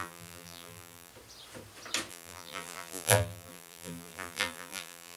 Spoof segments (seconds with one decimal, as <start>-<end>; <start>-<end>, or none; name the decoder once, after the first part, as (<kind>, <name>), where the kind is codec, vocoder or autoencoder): 0.0-1.1 (vocoder, BigVGAN v2); 2.1-5.2